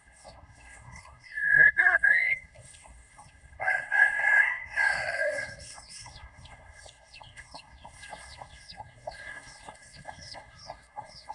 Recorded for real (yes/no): no